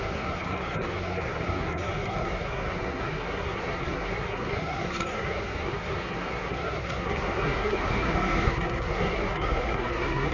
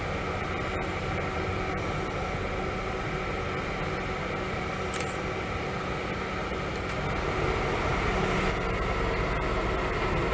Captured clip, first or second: second